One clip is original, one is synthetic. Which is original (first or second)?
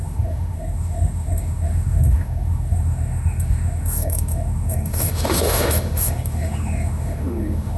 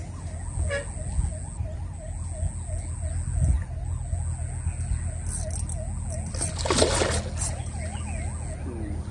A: second